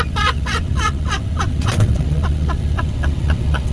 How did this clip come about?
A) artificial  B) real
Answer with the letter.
A